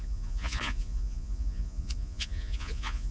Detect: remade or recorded remade